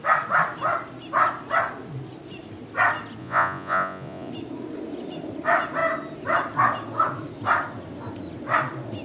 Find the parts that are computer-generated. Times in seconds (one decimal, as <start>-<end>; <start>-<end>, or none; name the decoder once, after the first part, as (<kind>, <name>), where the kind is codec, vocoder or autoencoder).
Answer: 3.2-4.3 (vocoder, Vocos)